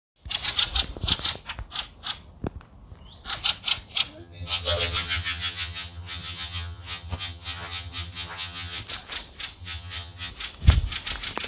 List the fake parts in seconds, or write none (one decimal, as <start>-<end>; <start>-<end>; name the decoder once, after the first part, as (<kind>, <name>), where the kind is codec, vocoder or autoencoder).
4.2-8.8 (vocoder, HiFi-GAN); 9.6-10.3